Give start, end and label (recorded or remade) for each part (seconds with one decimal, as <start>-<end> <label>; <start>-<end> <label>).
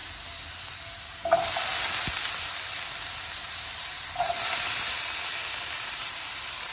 0.0-3.5 recorded; 3.5-5.3 remade; 5.3-5.9 recorded; 5.9-6.7 remade